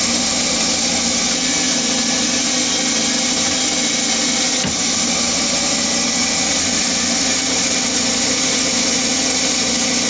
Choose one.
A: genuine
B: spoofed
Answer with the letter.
A